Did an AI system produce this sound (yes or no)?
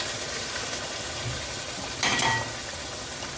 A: no